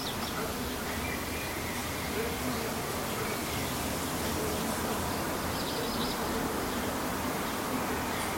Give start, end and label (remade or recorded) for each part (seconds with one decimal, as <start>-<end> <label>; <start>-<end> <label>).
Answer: 0.0-0.6 remade; 0.6-1.8 recorded; 1.8-5.7 remade; 5.7-8.4 recorded